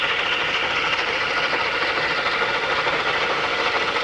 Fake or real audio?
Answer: real